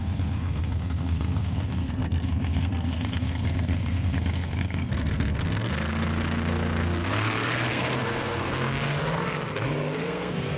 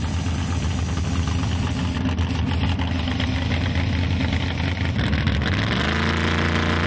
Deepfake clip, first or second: first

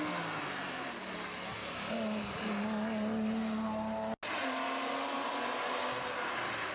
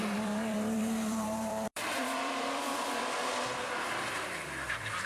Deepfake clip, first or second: second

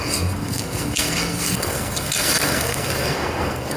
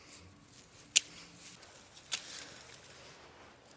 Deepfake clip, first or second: first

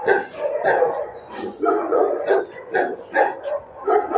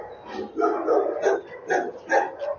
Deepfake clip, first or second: first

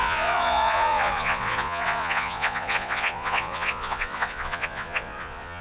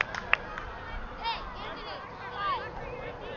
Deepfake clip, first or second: first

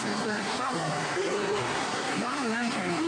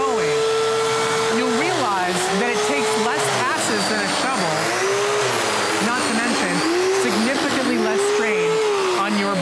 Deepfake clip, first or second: first